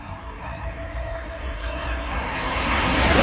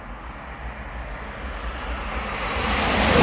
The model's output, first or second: first